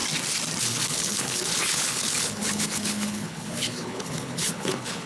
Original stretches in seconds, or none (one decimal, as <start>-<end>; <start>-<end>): 0.0-0.6